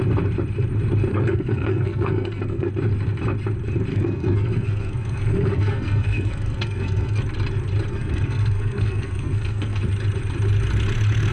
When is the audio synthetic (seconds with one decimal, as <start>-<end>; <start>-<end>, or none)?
1.1-2.7; 3.9-7.2; 7.9-9.8